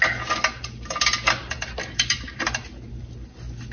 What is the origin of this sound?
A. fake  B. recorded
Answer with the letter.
B